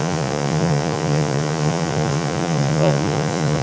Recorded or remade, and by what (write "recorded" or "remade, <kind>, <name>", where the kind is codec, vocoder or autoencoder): remade, vocoder, Vocos